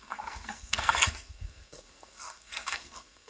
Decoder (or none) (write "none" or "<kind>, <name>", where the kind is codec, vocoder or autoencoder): codec, SNAC